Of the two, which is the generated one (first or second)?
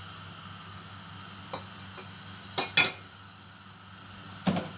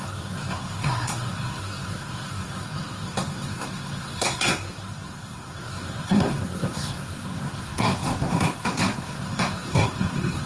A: second